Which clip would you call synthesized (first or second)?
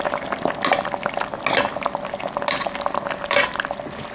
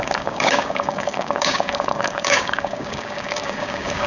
second